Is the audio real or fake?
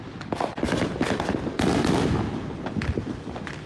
real